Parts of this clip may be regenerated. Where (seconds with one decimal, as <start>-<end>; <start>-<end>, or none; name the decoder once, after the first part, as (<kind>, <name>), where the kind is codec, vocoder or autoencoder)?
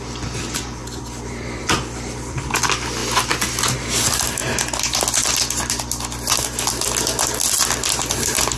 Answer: 0.8-2.6 (vocoder, BigVGAN v2); 3.0-3.5